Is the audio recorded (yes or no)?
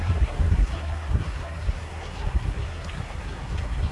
no